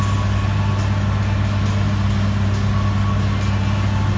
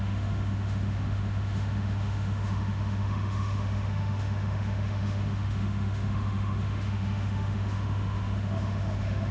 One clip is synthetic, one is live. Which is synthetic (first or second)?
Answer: second